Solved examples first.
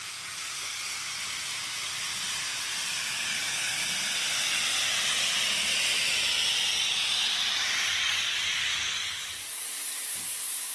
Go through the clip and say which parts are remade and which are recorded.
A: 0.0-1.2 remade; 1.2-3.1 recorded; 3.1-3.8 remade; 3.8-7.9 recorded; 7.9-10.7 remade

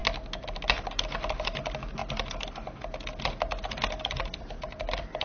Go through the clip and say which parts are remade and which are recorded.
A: 0.0-5.2 recorded